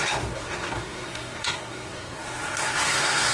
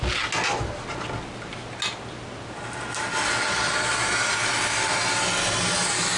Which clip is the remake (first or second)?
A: first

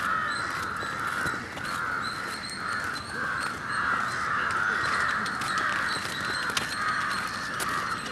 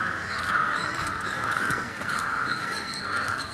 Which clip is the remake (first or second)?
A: second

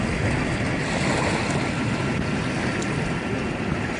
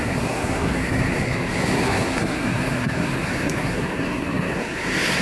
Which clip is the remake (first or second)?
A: second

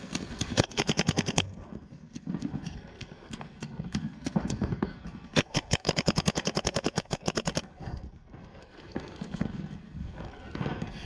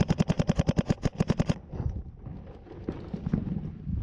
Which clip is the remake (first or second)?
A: first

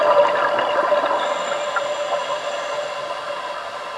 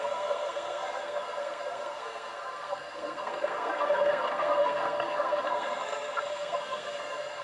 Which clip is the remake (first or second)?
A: second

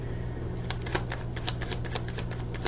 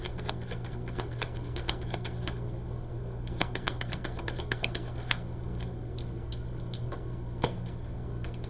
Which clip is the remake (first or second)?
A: second